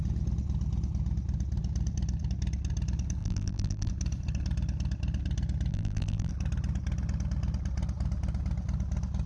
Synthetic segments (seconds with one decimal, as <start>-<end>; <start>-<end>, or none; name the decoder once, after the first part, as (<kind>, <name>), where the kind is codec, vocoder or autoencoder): 3.2-3.9 (vocoder, BigVGAN v2); 5.7-6.3